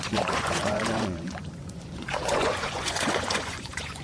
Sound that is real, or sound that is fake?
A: fake